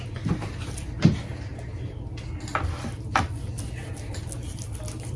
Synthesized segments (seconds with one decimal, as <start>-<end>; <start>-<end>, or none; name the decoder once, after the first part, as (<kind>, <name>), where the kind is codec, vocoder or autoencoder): none